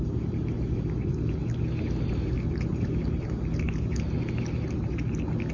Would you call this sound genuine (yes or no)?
yes